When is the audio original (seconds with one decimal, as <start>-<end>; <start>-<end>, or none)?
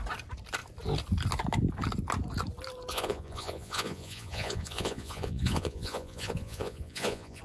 0.0-2.9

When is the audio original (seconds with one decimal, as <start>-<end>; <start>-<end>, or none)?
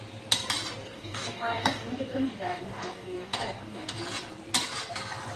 0.0-0.8; 4.0-5.4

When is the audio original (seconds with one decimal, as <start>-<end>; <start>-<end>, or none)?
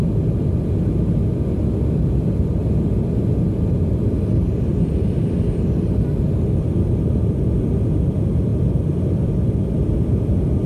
0.0-4.7; 7.6-8.5; 9.3-10.7